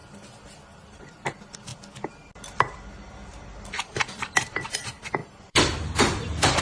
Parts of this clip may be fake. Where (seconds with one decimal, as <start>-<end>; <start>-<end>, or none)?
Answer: 1.1-1.7; 2.4-6.6